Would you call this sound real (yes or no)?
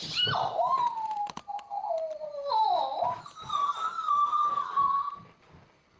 yes